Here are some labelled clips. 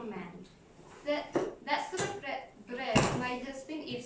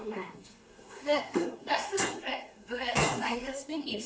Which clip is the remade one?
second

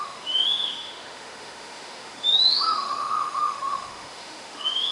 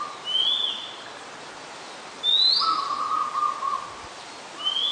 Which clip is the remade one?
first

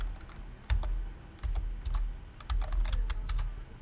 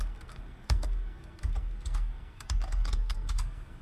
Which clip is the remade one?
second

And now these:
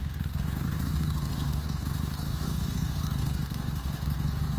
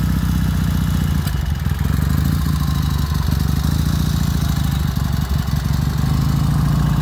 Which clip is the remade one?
first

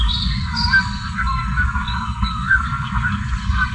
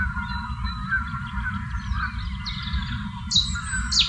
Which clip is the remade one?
first